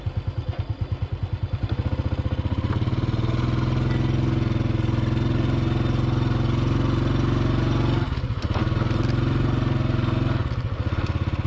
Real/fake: real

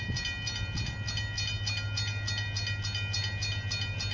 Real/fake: real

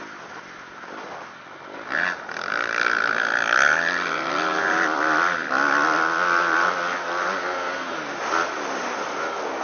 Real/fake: real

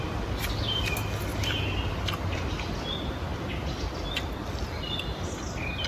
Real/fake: real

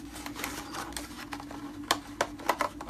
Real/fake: real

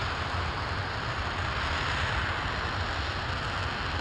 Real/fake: real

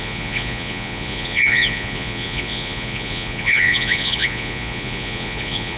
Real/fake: fake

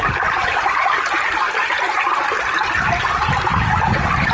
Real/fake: real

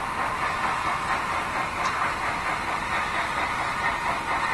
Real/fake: real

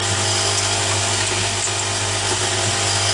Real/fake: real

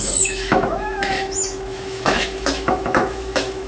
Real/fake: fake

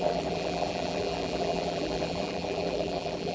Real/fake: fake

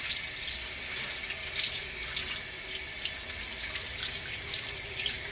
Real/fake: real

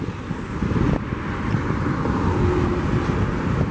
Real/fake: real